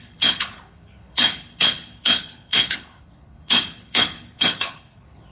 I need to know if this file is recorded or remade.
remade